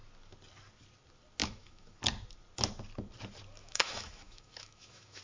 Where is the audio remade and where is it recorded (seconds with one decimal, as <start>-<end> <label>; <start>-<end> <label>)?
0.0-1.4 recorded; 1.4-2.0 remade; 2.0-3.6 recorded; 3.6-5.2 remade